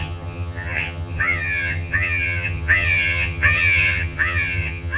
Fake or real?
fake